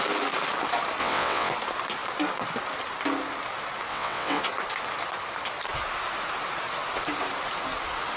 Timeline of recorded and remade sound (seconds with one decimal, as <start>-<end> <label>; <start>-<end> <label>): 0.0-1.0 recorded; 1.0-1.5 remade; 1.5-3.9 recorded; 3.9-4.4 remade; 4.4-8.2 recorded